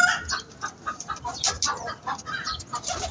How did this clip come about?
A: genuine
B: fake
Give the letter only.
A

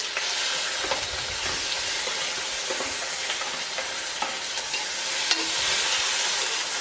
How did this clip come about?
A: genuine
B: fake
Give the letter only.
A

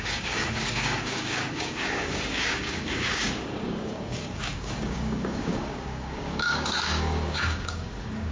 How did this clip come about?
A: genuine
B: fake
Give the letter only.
B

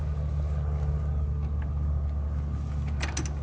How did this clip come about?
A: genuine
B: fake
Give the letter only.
A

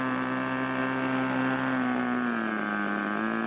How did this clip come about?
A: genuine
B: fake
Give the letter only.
A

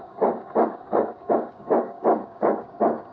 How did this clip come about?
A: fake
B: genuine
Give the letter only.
A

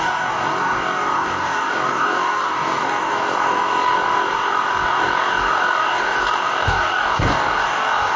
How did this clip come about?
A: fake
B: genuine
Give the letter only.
A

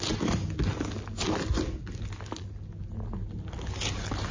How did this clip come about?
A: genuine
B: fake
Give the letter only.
A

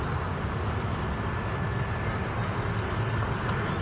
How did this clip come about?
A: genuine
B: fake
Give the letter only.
A